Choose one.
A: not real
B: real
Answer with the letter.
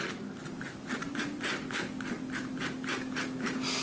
B